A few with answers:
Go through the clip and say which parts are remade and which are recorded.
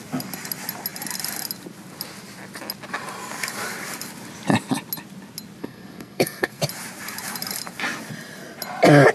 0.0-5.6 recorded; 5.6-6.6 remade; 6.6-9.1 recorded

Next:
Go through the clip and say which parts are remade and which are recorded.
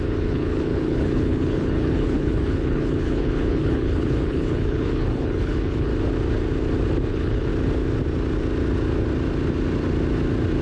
0.0-5.9 remade; 5.9-7.1 recorded; 7.1-7.5 remade; 7.5-10.6 recorded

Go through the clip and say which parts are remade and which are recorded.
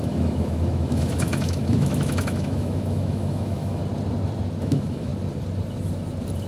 0.0-3.8 remade; 3.8-4.6 recorded; 4.6-5.1 remade; 5.1-6.5 recorded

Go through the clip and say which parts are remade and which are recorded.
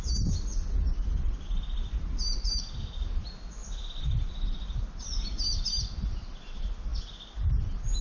0.0-8.0 recorded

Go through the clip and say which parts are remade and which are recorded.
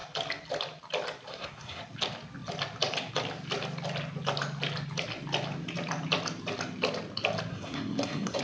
0.0-1.3 recorded; 1.3-1.8 remade; 1.8-7.5 recorded; 7.5-8.4 remade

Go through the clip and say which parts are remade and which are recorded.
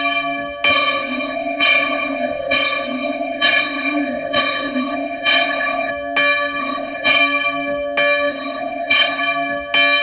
0.0-0.7 recorded; 0.7-5.9 remade; 5.9-6.6 recorded; 6.6-7.2 remade; 7.2-8.3 recorded; 8.3-9.2 remade; 9.2-10.0 recorded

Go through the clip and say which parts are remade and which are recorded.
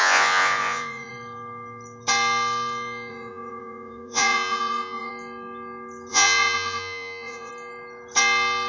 0.0-1.1 remade; 1.1-3.1 recorded; 3.1-5.1 remade; 5.1-6.1 recorded; 6.1-7.5 remade; 7.5-8.7 recorded